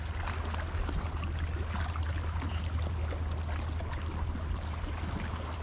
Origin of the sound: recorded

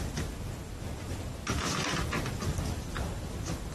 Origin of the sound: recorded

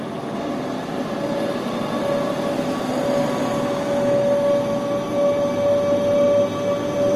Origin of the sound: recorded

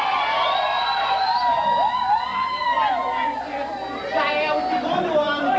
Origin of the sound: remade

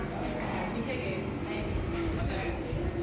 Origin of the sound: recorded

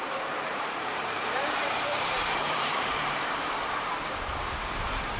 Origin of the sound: remade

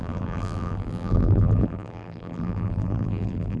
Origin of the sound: remade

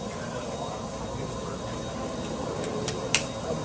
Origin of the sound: recorded